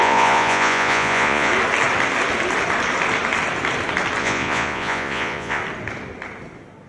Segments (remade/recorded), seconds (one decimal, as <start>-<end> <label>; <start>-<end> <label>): 0.0-1.5 remade; 1.5-4.2 recorded; 4.2-5.6 remade; 5.6-6.9 recorded